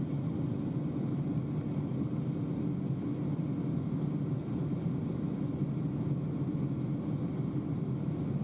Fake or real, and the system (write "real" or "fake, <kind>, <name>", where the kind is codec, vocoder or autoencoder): real